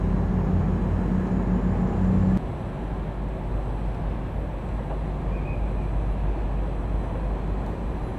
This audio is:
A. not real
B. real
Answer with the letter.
B